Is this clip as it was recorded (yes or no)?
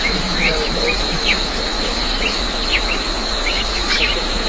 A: no